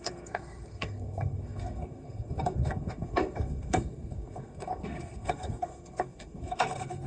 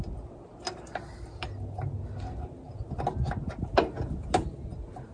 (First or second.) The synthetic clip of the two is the first